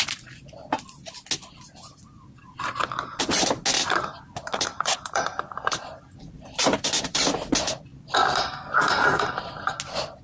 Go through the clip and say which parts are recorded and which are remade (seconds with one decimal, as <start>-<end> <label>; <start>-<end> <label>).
0.0-4.7 recorded; 4.7-7.5 remade; 7.5-7.9 recorded; 7.9-9.4 remade; 9.4-10.2 recorded